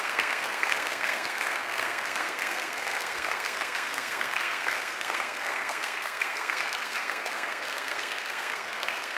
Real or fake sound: fake